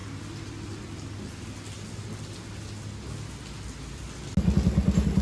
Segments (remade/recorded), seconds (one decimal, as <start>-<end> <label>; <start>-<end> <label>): 0.0-5.2 recorded